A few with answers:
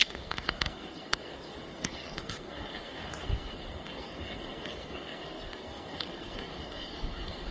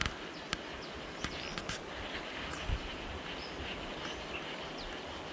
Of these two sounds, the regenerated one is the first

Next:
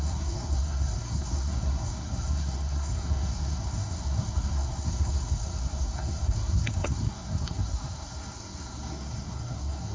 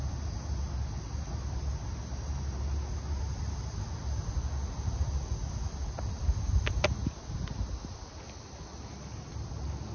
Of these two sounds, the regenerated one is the first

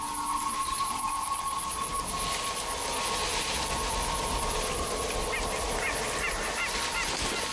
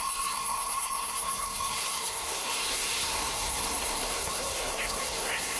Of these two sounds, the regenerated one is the second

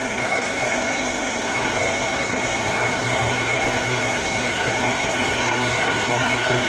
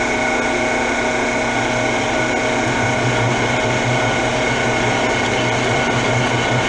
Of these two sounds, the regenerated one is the first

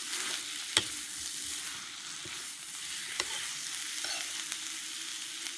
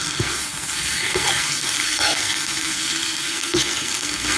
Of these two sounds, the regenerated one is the second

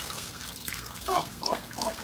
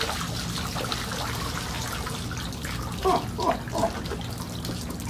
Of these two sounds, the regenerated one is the first